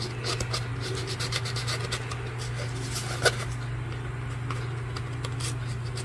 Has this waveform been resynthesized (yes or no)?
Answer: no